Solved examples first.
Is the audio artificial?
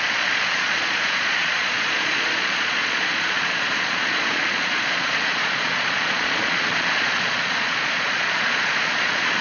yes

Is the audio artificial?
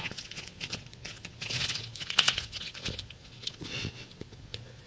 yes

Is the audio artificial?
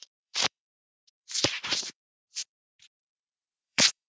yes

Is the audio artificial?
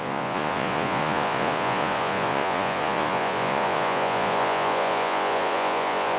yes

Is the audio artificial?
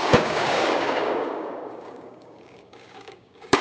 yes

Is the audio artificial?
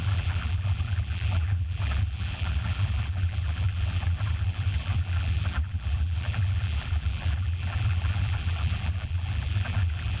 yes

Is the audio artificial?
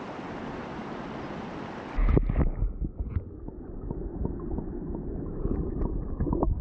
no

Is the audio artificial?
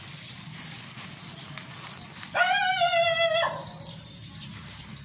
no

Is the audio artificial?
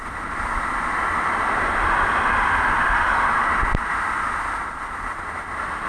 no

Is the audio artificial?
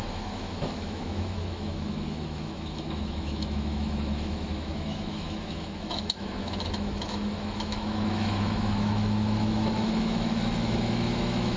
yes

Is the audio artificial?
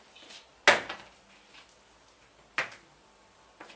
no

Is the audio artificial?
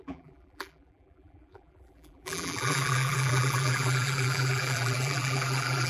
yes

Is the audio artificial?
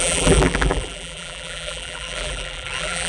yes